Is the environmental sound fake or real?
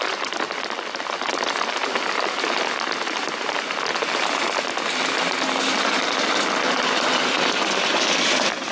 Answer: real